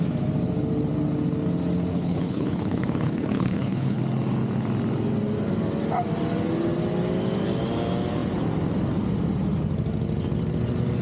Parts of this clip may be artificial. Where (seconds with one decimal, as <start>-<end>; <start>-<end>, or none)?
1.9-4.0